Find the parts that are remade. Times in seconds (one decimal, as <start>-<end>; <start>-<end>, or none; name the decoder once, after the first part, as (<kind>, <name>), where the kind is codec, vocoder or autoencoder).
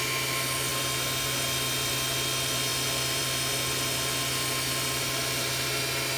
none